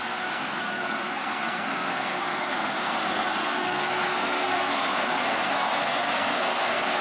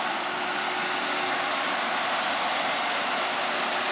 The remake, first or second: first